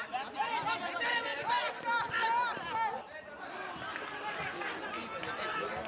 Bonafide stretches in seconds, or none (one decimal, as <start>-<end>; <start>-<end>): 0.0-1.3; 1.8-5.9

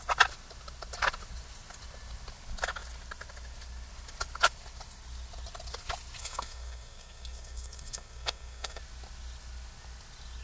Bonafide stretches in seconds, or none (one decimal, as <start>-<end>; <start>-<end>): 0.0-6.2; 8.8-10.4

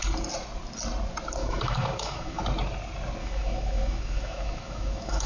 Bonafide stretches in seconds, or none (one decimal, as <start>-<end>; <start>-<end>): 0.0-1.4; 2.4-3.2

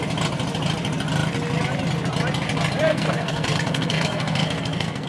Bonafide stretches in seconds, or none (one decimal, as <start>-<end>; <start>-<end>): 0.0-2.9